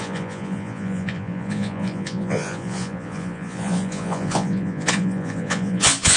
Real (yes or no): no